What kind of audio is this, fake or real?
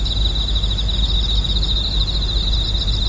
real